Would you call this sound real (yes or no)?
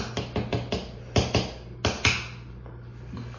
yes